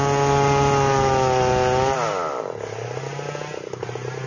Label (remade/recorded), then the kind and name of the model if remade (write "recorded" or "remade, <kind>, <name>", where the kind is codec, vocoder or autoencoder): recorded